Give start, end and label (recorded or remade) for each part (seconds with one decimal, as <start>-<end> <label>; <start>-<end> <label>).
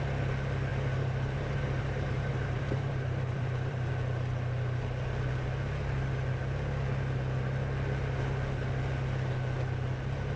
0.0-0.7 recorded; 0.7-3.9 remade; 3.9-10.4 recorded